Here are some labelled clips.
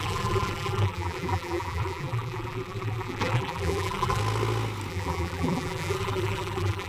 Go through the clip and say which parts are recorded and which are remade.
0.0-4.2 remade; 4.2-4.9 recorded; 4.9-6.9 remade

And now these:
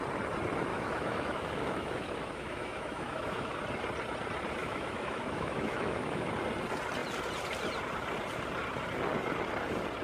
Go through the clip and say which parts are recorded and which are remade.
0.0-0.7 recorded; 0.7-3.5 remade; 3.5-4.6 recorded; 4.6-6.3 remade; 6.3-10.0 recorded

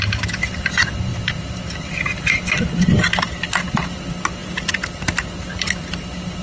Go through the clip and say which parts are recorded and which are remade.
0.0-6.4 remade